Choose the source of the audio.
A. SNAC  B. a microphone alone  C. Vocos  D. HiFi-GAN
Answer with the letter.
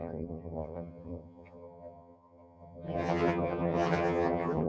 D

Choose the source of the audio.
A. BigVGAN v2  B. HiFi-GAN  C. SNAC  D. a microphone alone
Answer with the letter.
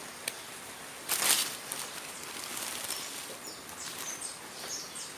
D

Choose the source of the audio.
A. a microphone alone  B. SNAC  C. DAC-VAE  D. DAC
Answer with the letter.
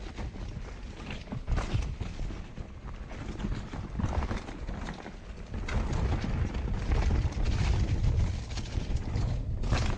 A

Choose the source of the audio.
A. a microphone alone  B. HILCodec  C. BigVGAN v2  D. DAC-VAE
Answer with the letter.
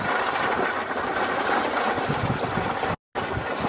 A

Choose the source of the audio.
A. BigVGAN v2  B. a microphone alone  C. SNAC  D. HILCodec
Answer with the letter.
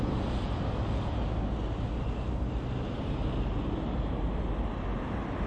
B